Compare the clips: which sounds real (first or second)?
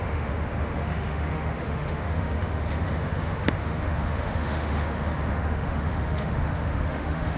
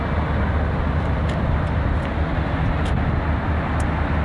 second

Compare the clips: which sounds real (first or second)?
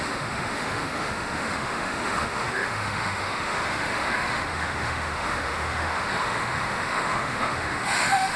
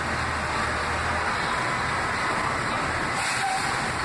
second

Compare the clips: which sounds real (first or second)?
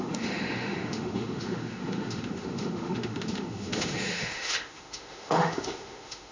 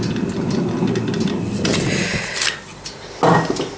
second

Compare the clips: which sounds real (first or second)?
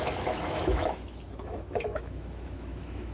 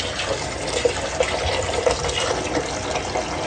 second